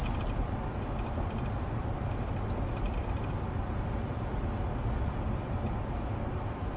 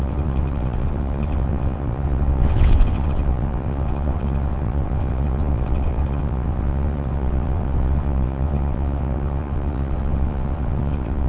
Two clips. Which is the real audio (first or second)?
first